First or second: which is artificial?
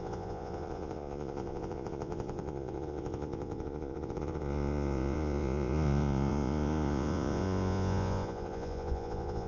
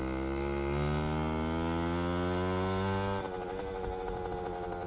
first